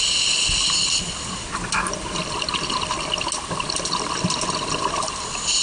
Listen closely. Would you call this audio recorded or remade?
recorded